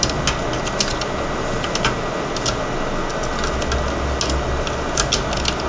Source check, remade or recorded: recorded